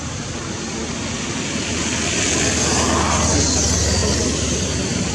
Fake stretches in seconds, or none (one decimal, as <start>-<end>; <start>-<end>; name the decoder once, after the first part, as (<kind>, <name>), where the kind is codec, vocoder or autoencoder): none